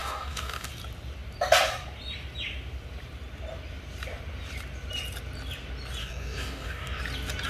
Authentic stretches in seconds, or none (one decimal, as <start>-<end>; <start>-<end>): 0.7-6.0; 7.0-7.5